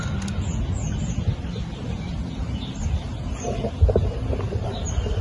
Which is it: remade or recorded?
recorded